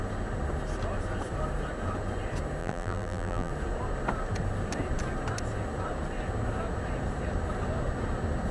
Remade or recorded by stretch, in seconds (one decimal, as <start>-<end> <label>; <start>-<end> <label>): 0.0-2.6 recorded; 2.6-3.5 remade; 3.5-8.5 recorded